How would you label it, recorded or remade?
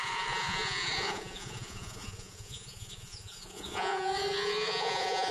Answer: remade